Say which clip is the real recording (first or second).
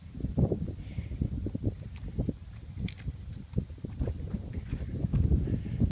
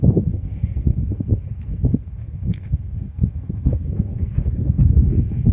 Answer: first